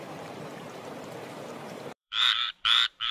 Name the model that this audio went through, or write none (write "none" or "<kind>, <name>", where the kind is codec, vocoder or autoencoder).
vocoder, BigVGAN v2